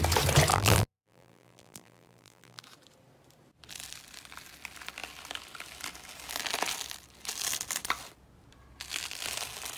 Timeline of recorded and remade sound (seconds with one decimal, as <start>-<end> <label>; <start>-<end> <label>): 0.0-0.5 recorded; 0.5-2.6 remade; 2.6-9.8 recorded